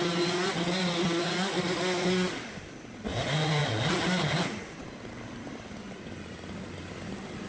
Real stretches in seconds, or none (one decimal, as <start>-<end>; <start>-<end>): 0.0-7.5